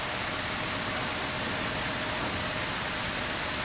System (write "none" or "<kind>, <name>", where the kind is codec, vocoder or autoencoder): none